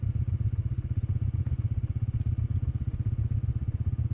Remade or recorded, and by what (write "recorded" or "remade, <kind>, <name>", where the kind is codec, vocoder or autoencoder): recorded